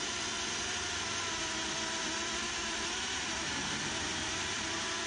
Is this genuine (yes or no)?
no